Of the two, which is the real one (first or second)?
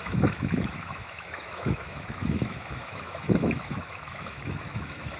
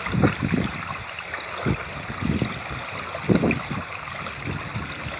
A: second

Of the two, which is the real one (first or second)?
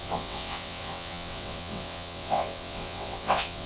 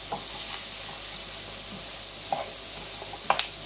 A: second